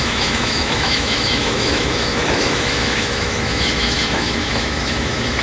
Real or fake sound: fake